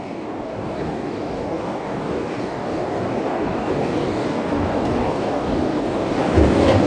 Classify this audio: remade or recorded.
remade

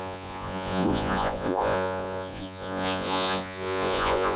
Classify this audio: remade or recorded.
remade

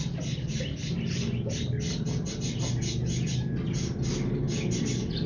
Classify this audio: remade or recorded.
recorded